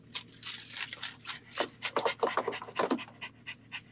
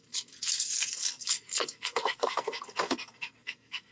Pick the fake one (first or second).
second